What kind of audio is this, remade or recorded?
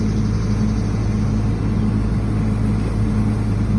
recorded